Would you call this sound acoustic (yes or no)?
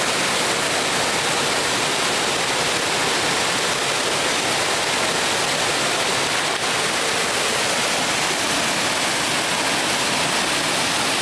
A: yes